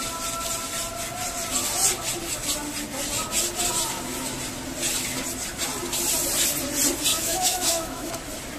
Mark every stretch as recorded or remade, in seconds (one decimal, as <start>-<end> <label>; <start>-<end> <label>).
0.0-7.1 recorded; 7.1-8.1 remade; 8.1-8.6 recorded